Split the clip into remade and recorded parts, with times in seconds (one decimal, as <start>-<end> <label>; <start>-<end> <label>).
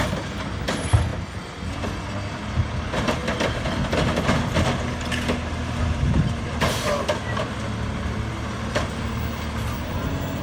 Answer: 0.0-10.4 recorded